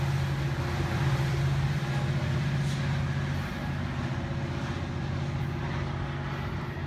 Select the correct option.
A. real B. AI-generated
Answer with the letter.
A